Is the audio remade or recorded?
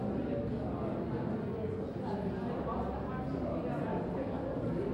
recorded